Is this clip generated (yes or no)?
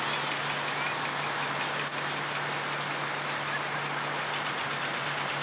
no